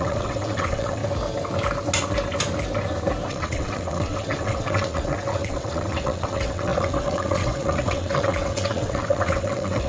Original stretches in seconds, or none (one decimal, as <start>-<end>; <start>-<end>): 1.0-3.3